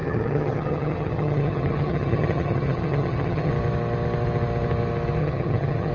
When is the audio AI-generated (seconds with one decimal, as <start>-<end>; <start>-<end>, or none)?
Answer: 0.0-3.5; 5.2-5.9